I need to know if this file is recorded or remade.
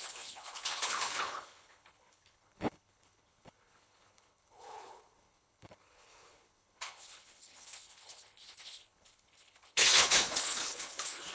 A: remade